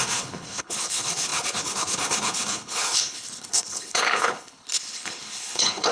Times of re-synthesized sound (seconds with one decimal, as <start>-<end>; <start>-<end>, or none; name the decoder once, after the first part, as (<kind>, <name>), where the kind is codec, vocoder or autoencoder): 0.0-5.9 (codec, HILCodec)